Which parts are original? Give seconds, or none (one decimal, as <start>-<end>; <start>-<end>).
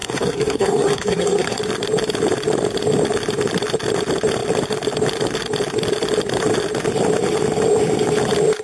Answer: 1.6-8.6